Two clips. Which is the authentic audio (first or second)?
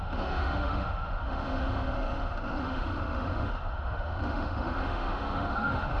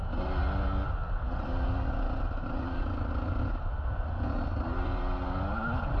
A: second